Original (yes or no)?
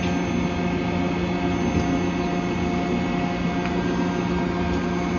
yes